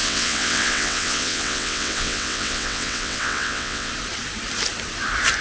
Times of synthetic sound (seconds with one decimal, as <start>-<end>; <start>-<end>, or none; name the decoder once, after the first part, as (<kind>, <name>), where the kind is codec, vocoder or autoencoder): 0.0-3.9 (vocoder, WaveNeXt)